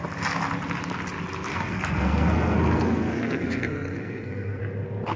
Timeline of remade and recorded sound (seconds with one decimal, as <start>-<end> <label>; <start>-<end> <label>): 0.0-1.5 recorded; 1.5-4.6 remade; 4.6-5.2 recorded